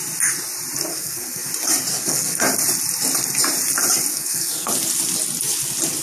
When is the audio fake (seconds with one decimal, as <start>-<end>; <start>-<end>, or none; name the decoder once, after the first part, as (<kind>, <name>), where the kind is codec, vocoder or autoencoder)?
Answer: 0.9-1.5 (codec, SNAC); 1.9-2.4; 4.1-4.7